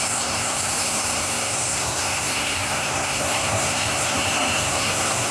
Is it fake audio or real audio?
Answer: fake